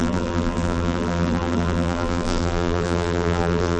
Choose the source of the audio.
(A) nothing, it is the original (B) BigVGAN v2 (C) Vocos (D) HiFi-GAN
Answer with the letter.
B